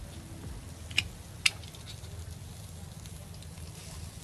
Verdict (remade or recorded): recorded